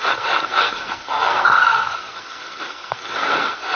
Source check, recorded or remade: remade